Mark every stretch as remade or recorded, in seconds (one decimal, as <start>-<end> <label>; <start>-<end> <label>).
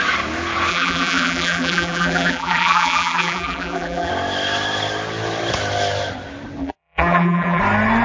0.0-0.7 recorded; 0.7-4.1 remade; 4.1-6.6 recorded; 6.6-7.6 remade; 7.6-8.0 recorded